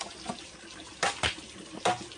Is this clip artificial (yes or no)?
no